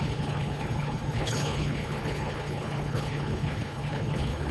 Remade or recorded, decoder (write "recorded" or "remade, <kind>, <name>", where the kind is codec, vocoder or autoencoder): remade, codec, HILCodec